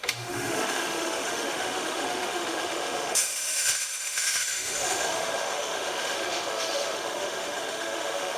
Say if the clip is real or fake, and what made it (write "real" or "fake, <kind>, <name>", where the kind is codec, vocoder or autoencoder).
fake, autoencoder, DAC-VAE